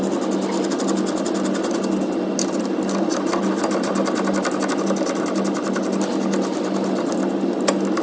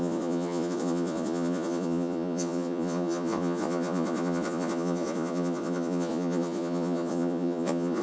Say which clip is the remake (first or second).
second